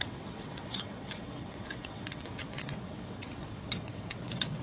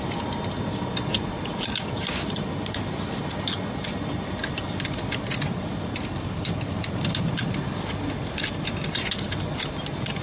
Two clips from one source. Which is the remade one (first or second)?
first